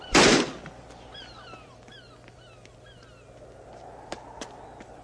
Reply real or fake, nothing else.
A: real